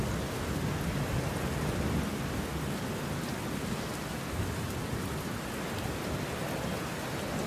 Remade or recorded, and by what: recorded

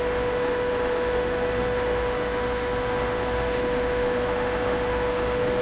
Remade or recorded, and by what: remade, autoencoder, DAC-VAE